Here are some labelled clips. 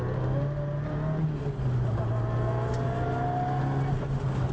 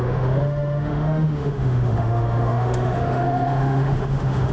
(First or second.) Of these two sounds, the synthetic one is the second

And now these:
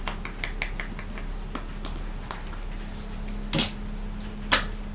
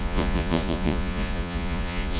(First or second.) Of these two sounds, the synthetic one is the second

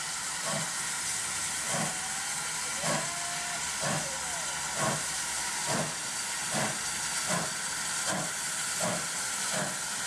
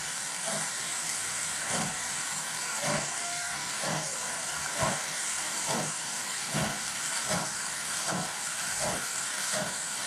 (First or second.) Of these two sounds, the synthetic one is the second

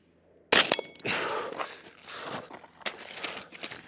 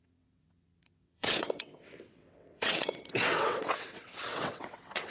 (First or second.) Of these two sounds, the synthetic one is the second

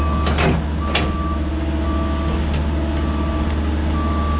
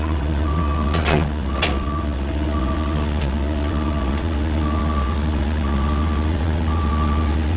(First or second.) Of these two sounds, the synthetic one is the second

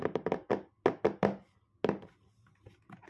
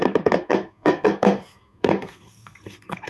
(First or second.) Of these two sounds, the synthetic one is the second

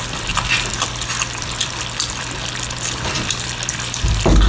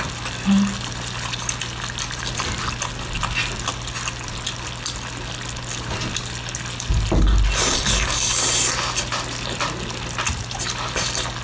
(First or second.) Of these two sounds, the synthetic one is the first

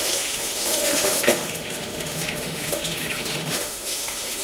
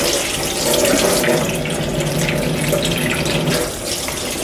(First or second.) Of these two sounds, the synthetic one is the first